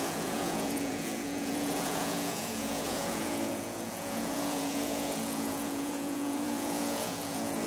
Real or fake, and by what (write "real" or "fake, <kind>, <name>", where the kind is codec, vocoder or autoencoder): fake, vocoder, Vocos